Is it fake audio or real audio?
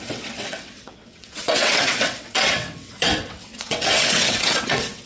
fake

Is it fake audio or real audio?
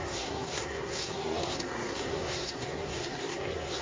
fake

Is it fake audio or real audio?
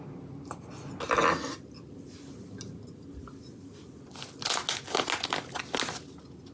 real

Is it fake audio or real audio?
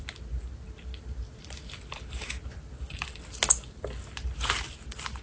real